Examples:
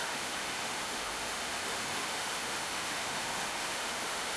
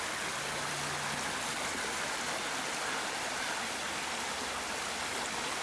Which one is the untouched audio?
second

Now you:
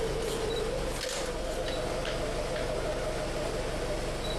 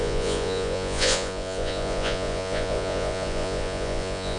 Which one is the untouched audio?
first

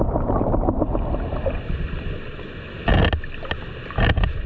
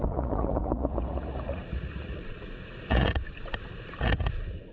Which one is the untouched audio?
first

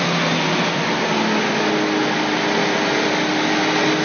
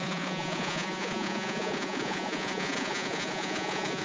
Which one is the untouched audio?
first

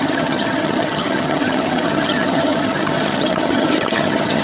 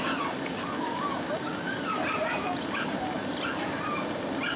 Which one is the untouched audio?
second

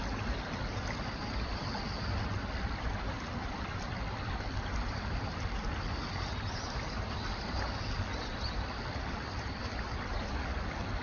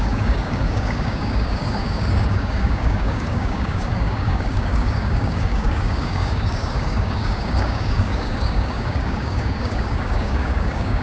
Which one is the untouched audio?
first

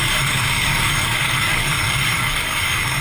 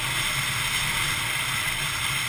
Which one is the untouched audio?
second